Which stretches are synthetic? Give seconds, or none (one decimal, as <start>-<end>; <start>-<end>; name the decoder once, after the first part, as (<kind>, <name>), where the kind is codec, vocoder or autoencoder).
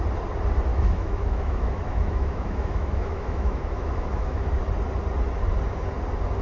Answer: 0.7-4.5 (autoencoder, DAC-VAE)